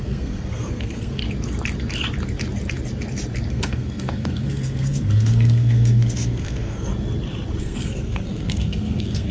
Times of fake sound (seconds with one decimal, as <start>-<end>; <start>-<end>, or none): 0.0-1.2; 3.5-6.9; 7.6-9.3